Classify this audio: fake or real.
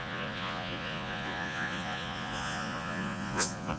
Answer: fake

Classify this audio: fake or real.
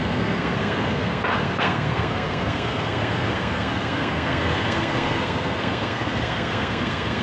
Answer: fake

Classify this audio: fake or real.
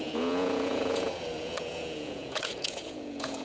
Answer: fake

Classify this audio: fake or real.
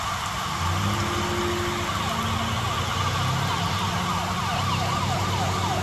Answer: real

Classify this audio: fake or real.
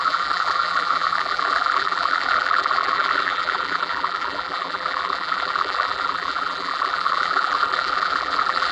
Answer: fake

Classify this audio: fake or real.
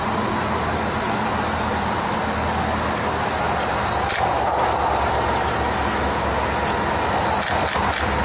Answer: real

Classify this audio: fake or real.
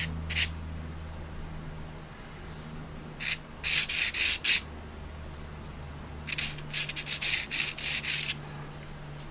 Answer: real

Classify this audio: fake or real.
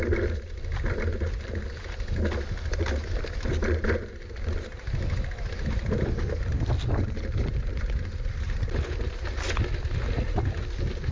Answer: real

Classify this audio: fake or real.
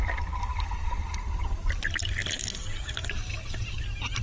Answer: real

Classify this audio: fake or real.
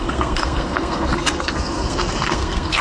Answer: fake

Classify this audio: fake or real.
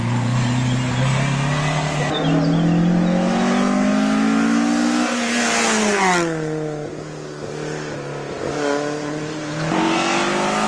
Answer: real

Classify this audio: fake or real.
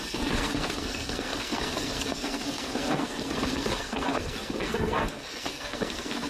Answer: fake